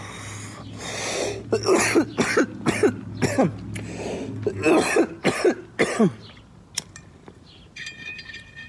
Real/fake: real